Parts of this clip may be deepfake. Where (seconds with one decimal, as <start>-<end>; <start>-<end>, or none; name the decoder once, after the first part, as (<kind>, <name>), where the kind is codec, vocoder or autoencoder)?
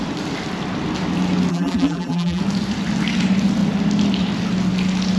1.5-2.4 (vocoder, BigVGAN v2)